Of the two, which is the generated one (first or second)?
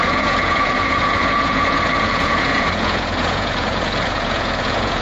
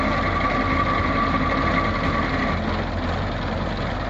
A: first